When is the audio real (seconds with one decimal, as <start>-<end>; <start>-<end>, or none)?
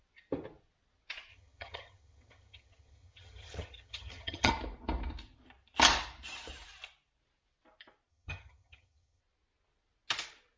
0.0-1.3; 4.5-8.1; 9.2-10.6